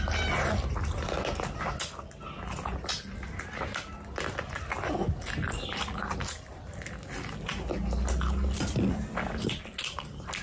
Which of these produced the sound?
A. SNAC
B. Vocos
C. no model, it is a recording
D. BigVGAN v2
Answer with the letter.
C